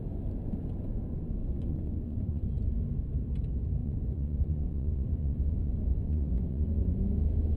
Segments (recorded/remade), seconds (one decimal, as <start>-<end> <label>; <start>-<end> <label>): 0.0-1.4 recorded; 1.4-2.5 remade; 2.5-3.8 recorded; 3.8-7.0 remade; 7.0-7.6 recorded